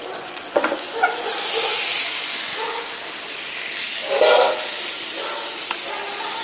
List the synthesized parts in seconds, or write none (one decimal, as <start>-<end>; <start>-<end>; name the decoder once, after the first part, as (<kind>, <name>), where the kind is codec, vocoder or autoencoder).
0.0-1.3 (vocoder, Vocos); 2.0-2.5